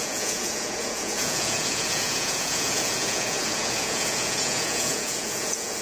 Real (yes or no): no